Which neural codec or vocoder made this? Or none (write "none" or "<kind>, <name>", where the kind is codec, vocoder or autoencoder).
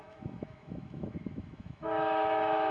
autoencoder, DAC-VAE